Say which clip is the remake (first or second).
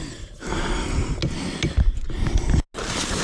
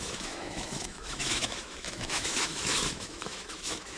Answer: second